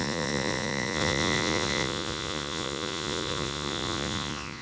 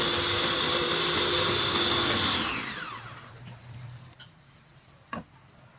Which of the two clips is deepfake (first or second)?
first